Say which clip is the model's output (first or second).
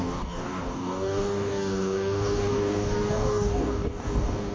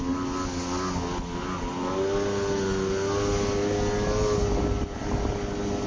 first